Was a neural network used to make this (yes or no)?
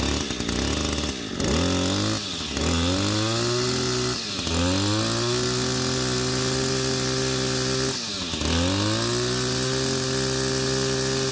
no